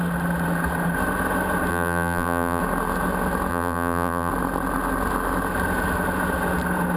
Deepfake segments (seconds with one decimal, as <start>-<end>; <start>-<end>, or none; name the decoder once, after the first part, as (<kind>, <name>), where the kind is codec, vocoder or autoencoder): 1.7-2.6 (vocoder, BigVGAN v2); 3.5-4.3